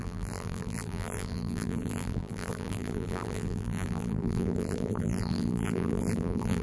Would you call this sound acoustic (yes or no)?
no